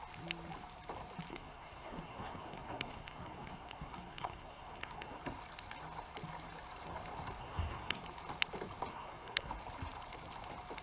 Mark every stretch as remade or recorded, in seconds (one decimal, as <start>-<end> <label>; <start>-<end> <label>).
0.0-1.3 recorded; 1.3-5.2 remade; 5.2-7.4 recorded; 7.4-8.0 remade; 8.0-8.9 recorded; 8.9-9.5 remade; 9.5-10.8 recorded